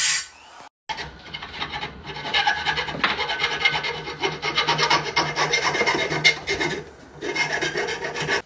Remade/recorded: recorded